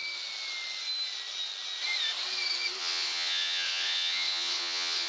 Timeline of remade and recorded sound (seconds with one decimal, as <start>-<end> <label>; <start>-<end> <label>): 0.0-2.8 recorded; 2.8-5.1 remade